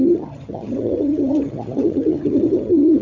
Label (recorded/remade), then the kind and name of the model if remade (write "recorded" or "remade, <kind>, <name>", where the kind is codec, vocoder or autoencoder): remade, vocoder, HiFi-GAN